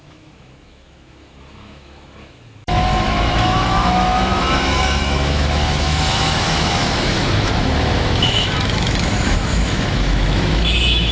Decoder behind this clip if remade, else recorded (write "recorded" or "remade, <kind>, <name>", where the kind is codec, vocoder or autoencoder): remade, autoencoder, DAC-VAE